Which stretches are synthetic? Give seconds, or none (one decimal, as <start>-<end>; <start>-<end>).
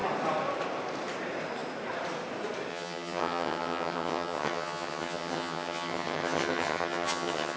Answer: 2.7-7.6